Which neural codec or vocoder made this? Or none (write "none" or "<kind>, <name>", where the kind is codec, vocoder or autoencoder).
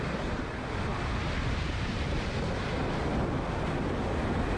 none